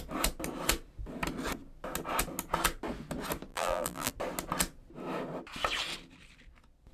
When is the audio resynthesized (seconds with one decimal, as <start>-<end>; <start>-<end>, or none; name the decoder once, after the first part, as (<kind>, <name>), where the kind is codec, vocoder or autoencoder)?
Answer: 3.5-4.1 (vocoder, BigVGAN v2)